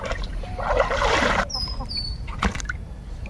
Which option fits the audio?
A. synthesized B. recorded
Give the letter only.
A